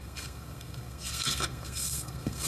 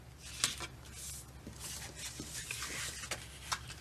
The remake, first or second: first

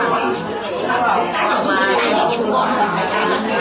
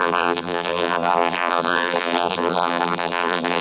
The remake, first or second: second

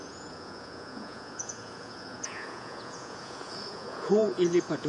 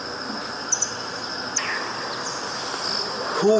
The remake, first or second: first